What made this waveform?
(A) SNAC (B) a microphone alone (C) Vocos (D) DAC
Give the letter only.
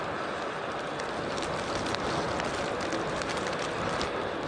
B